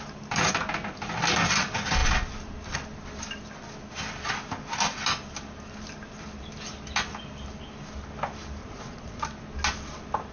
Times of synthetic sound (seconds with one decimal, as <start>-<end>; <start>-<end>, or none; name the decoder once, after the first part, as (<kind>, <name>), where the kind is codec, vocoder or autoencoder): 8.6-9.2 (vocoder, Vocos)